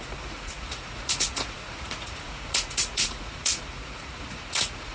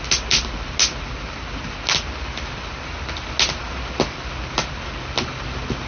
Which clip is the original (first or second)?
second